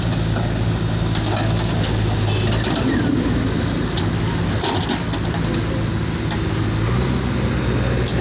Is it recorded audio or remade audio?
recorded